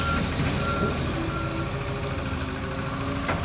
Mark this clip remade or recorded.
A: recorded